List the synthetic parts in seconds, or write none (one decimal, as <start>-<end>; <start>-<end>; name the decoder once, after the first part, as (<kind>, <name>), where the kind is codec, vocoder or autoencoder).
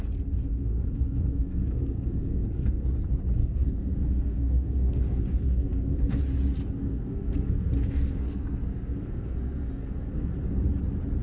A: 0.4-2.9 (codec, SNAC); 3.4-6.2; 6.8-10.3